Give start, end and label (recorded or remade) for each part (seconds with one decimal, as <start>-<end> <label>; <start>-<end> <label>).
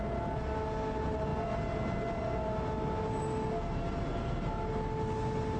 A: 0.0-5.6 recorded